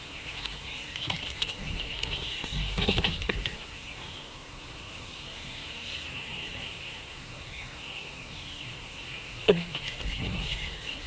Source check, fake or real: fake